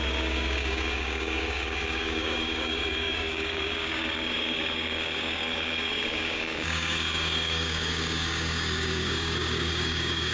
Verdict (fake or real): fake